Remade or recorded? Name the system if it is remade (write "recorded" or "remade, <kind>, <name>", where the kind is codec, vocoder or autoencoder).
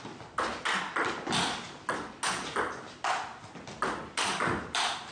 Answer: recorded